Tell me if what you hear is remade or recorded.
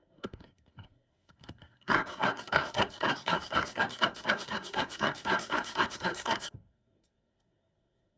remade